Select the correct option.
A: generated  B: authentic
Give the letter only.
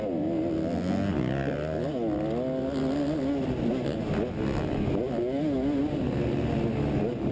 B